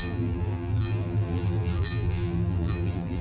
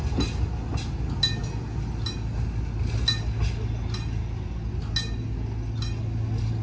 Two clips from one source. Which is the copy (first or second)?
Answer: first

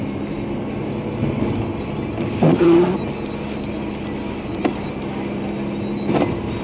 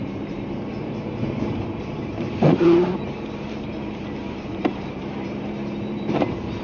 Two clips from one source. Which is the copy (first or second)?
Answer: second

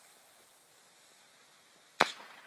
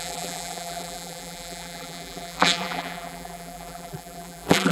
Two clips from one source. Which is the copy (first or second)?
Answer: second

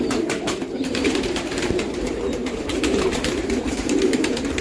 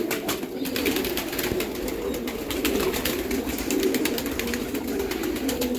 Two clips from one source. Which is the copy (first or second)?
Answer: first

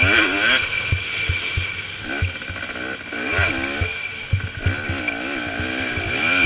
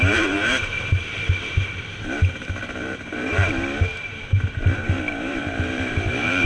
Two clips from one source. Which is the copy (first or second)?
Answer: second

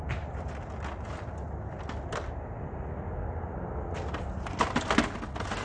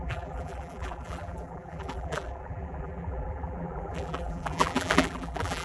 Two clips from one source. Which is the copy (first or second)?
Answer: second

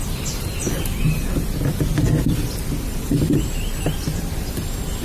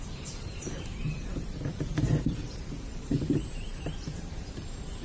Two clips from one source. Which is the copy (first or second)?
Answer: second